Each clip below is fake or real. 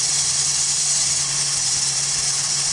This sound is real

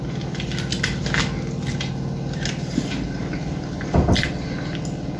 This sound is real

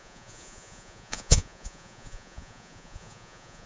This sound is fake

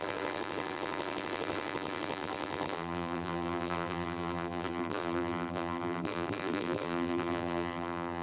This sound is fake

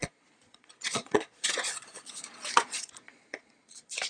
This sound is fake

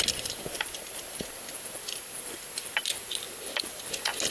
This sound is real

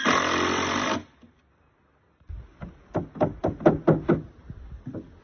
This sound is real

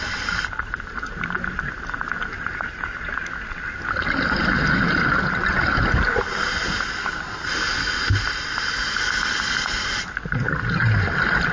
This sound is real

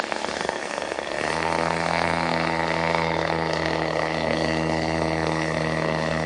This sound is fake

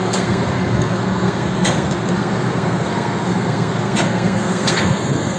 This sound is fake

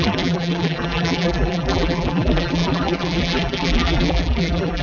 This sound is fake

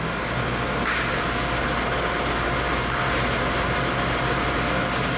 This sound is real